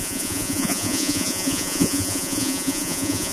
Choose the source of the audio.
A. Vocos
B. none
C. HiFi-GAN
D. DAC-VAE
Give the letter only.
A